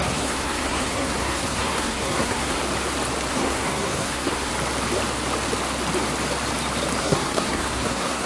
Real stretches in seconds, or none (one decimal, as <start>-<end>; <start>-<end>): 2.6-3.3; 4.5-7.0